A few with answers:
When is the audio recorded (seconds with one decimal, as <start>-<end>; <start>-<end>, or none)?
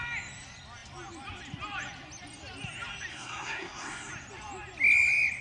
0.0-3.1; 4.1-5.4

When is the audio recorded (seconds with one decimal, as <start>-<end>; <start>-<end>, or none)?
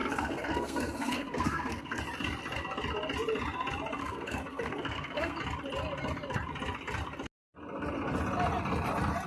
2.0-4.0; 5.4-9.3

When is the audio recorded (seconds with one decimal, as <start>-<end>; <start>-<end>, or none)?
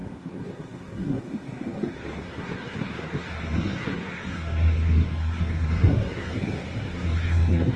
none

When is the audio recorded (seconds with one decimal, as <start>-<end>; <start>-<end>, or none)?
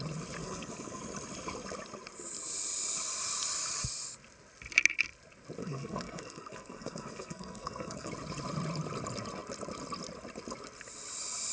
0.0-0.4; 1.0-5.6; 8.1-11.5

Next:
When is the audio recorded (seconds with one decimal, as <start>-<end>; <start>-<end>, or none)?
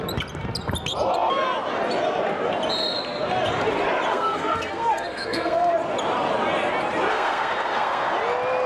0.0-4.1; 5.7-7.1; 8.1-8.7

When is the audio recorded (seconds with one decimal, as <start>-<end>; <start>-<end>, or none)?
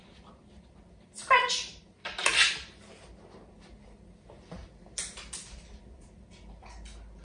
0.0-7.2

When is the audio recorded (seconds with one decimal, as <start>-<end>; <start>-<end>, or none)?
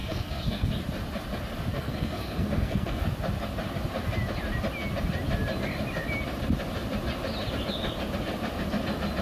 0.7-1.7; 3.0-9.2